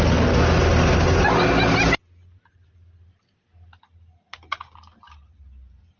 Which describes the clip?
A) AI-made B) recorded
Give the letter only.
B